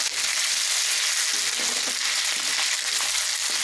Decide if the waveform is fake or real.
real